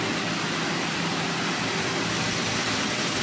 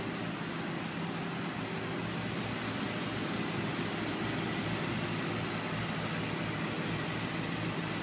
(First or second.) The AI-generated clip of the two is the first